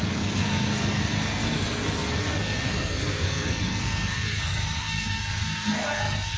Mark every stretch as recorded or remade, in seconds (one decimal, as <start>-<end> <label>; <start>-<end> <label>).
0.0-6.4 remade